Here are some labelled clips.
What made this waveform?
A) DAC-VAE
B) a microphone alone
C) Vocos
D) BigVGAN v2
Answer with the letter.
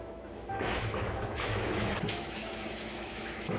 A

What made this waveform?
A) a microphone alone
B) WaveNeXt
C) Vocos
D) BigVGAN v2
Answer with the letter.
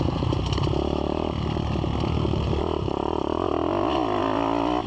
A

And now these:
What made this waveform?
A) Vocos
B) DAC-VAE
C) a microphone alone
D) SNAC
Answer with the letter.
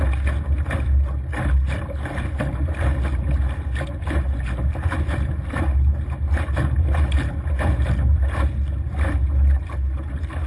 C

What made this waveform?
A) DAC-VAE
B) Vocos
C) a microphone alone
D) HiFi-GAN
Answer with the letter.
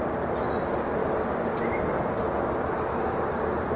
C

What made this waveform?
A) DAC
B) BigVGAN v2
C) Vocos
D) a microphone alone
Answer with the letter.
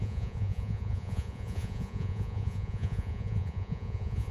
C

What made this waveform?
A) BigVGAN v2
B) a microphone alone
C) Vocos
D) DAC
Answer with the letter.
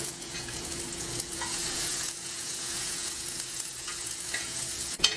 C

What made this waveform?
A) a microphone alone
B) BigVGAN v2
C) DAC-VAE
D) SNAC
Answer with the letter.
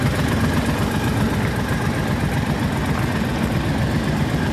A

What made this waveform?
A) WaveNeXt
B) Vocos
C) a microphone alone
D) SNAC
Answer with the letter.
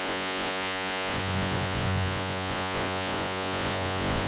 B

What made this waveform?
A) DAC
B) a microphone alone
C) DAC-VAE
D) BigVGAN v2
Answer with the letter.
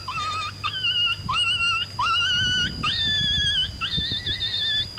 B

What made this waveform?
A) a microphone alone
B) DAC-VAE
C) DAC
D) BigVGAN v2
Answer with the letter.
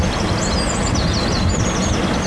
A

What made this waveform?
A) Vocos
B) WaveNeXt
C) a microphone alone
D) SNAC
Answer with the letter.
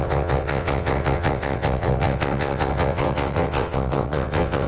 B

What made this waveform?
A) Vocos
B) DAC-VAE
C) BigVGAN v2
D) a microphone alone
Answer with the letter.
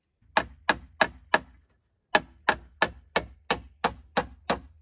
D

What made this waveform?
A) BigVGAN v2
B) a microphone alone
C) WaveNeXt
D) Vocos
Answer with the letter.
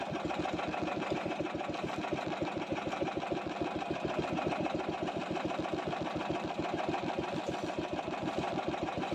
B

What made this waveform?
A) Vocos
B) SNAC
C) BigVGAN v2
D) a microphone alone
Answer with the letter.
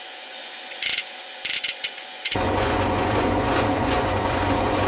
A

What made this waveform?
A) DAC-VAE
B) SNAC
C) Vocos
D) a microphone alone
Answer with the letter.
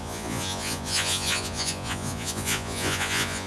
C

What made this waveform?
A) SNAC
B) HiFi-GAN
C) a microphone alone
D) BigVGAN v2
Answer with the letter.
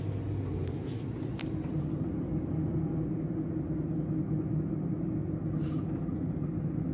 C